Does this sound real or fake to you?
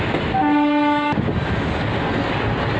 real